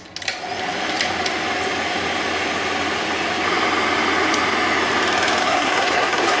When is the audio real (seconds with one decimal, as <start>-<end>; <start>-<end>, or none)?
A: 0.0-5.4